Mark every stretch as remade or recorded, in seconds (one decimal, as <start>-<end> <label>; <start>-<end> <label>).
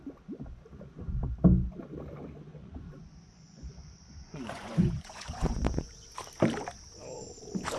0.0-2.5 recorded; 2.5-6.1 remade; 6.1-7.8 recorded